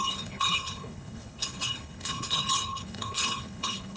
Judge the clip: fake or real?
fake